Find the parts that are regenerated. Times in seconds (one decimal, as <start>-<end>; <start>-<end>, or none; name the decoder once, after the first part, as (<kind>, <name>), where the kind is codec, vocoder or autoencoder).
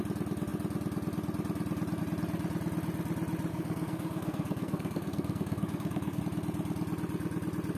3.5-6.2 (codec, SNAC)